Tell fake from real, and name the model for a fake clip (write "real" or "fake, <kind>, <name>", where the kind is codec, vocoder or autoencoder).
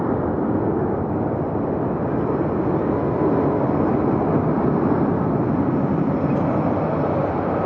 real